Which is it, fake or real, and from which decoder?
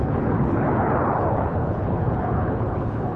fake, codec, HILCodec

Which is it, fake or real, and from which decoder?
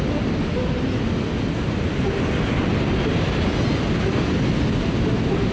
real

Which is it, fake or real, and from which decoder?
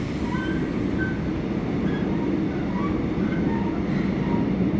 real